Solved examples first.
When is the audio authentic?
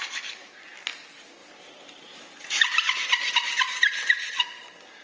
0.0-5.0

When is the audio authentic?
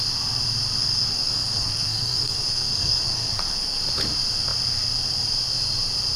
0.0-0.8; 3.8-6.2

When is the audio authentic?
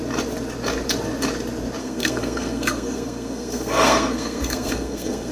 0.0-1.8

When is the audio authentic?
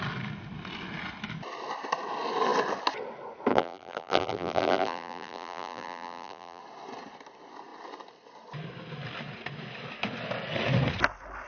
0.0-3.5; 6.6-11.5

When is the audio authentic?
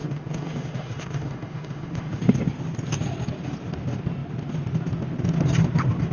2.2-6.1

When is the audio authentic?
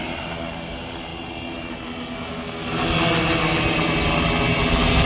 0.0-5.1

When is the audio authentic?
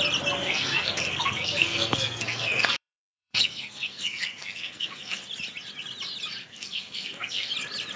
0.0-0.4; 5.2-6.4; 7.5-8.0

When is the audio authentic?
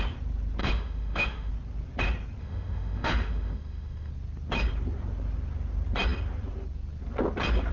0.0-0.6; 1.5-2.4; 4.1-7.7